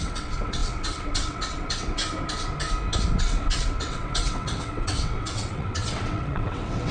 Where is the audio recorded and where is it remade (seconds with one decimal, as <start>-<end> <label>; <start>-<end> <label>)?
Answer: 0.0-2.0 remade; 2.0-3.1 recorded; 3.1-6.9 remade